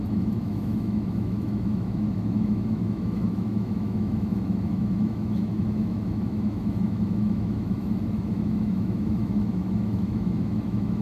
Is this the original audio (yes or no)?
no